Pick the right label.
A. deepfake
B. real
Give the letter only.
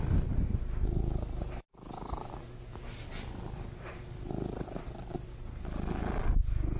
B